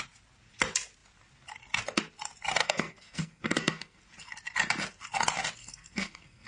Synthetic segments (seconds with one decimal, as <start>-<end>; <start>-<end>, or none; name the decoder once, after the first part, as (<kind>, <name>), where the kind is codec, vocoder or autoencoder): 2.6-4.0 (codec, SNAC); 5.6-6.5